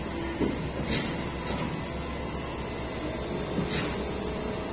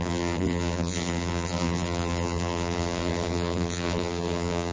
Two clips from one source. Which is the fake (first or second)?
second